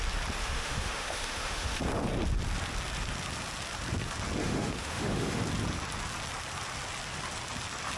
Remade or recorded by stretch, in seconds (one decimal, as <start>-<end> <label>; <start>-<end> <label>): 0.0-0.4 recorded; 0.4-1.8 remade; 1.8-4.4 recorded; 4.4-5.4 remade; 5.4-8.0 recorded